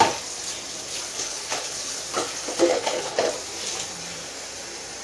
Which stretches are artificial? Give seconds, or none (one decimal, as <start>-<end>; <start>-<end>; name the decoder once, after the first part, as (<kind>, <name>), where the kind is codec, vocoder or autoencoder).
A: 1.1-2.0 (codec, HILCodec); 2.7-3.3